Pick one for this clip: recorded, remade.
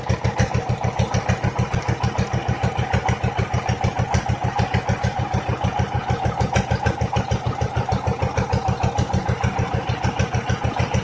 recorded